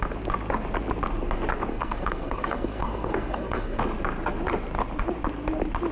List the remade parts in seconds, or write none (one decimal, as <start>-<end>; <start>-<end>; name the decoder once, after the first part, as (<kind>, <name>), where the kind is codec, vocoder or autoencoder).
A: 1.7-3.8 (codec, SNAC)